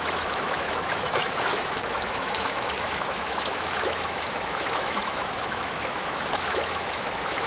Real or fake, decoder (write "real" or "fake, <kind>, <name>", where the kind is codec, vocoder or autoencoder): fake, autoencoder, DAC-VAE